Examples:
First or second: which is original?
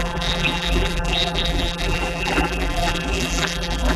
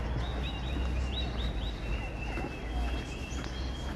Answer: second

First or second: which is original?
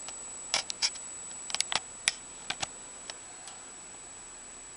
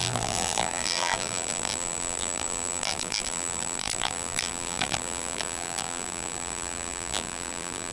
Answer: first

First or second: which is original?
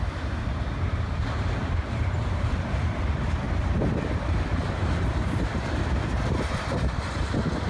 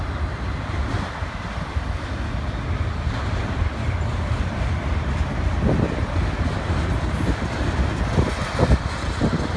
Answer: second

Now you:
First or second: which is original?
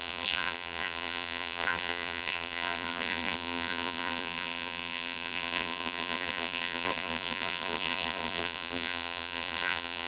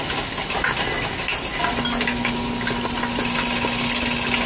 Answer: second